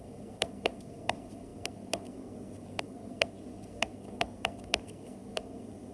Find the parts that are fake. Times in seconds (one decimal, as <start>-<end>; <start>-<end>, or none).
0.0-5.9